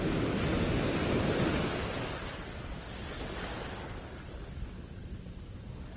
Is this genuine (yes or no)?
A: yes